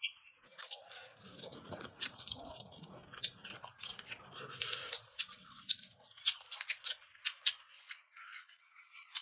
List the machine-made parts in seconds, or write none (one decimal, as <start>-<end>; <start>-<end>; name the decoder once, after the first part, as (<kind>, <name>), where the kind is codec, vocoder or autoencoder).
0.0-3.0 (vocoder, Vocos); 7.8-9.2